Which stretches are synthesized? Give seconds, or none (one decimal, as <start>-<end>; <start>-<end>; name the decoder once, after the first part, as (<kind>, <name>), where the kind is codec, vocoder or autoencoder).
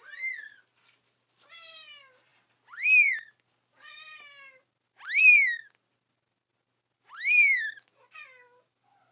none